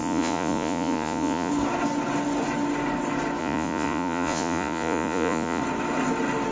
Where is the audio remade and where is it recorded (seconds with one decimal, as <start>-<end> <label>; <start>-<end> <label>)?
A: 0.0-1.5 remade; 1.5-3.4 recorded; 3.4-5.6 remade; 5.6-6.5 recorded